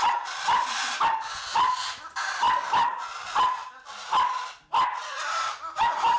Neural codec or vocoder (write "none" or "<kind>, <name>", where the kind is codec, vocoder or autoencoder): none